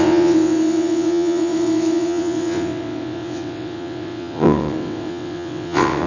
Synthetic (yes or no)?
yes